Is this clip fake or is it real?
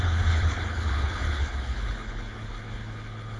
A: fake